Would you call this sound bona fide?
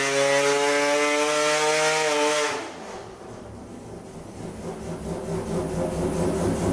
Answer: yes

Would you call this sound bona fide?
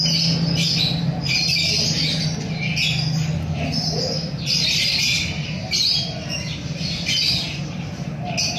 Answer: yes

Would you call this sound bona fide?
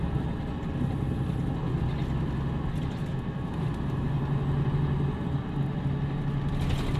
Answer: yes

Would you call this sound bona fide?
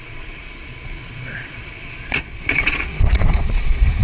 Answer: no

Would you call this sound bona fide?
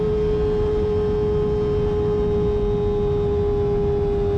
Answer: yes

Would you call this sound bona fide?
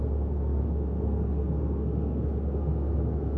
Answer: no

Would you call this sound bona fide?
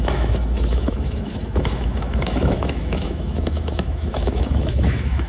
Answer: no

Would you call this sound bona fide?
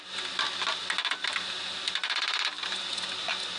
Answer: no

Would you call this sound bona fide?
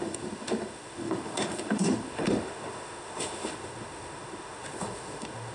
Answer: no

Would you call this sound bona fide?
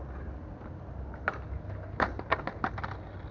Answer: yes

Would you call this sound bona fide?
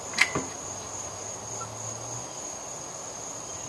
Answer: no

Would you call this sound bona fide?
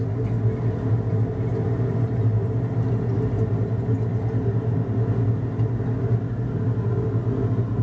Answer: yes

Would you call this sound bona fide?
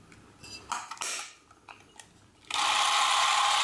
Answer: yes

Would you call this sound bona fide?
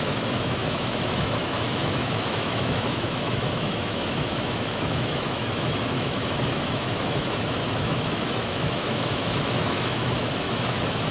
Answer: no